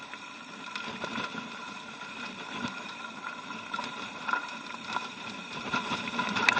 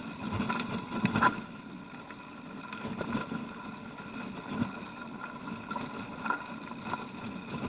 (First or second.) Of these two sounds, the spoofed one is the first